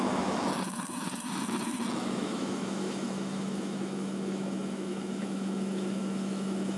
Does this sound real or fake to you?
fake